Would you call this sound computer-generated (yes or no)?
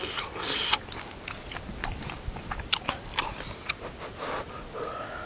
no